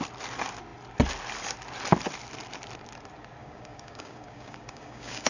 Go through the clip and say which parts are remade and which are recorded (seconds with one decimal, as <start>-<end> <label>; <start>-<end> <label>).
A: 0.0-3.4 recorded; 3.4-5.3 remade